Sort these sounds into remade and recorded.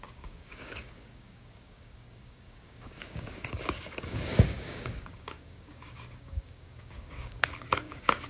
remade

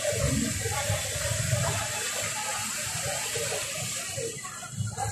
recorded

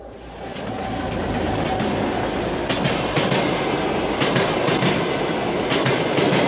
recorded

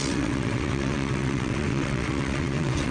remade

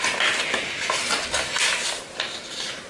recorded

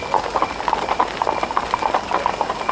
recorded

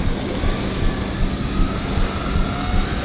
recorded